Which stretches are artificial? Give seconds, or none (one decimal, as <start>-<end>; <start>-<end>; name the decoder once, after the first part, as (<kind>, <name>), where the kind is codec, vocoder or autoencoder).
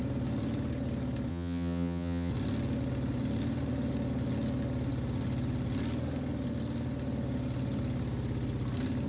1.3-2.3 (vocoder, HiFi-GAN)